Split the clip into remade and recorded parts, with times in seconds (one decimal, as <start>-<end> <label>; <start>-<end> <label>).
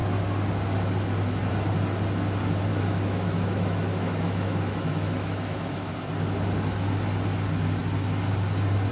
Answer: 0.0-2.7 recorded; 2.7-5.9 remade; 5.9-8.9 recorded